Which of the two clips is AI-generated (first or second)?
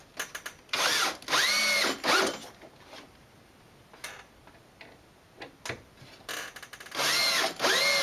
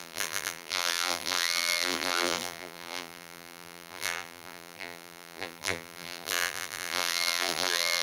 second